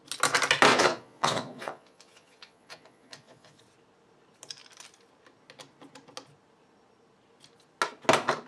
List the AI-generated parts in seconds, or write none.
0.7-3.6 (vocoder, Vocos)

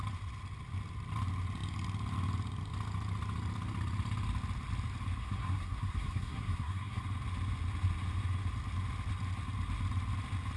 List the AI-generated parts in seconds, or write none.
5.2-7.0 (codec, SNAC)